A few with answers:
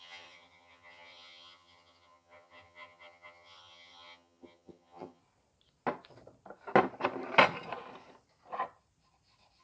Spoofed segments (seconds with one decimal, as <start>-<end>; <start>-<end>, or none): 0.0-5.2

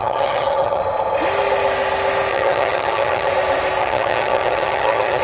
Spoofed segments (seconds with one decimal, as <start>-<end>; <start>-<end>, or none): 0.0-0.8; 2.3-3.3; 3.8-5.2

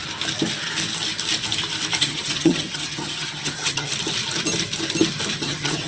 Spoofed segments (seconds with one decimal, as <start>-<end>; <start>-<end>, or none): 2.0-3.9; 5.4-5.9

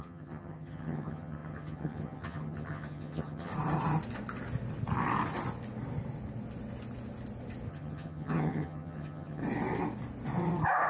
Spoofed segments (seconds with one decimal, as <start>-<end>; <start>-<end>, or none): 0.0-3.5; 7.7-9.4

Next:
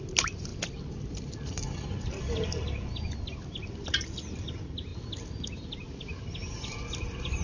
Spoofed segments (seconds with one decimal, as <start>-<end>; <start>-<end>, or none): none

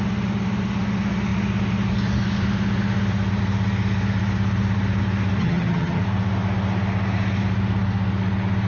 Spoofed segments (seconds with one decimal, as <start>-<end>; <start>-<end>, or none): 5.4-6.0

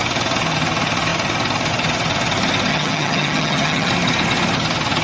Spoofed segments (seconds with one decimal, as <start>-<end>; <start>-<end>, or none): 2.7-3.9

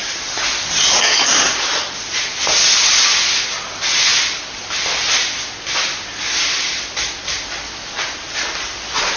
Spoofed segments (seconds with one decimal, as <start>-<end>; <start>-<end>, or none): none